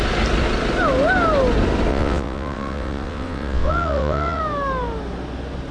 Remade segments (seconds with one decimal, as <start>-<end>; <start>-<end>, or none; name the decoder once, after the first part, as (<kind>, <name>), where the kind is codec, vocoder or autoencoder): 1.9-4.4 (vocoder, WaveNeXt)